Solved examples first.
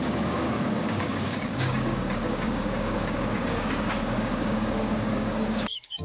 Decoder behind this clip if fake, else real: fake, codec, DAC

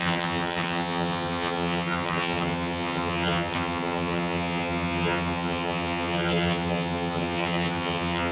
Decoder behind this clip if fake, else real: fake, vocoder, HiFi-GAN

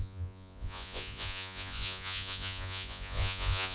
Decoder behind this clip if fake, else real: fake, vocoder, Vocos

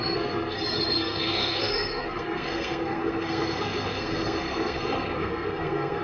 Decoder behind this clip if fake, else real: fake, codec, SNAC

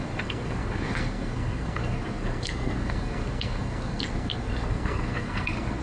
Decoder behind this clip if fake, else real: fake, codec, SNAC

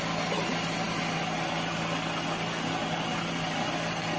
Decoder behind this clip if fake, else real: real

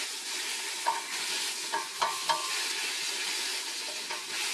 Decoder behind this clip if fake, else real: fake, vocoder, Vocos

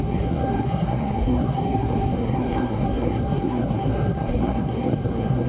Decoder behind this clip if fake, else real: fake, codec, SNAC